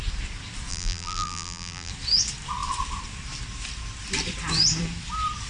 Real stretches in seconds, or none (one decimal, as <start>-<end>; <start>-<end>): 0.0-0.7; 1.9-5.5